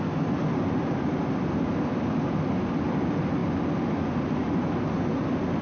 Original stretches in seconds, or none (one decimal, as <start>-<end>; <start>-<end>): 0.0-5.6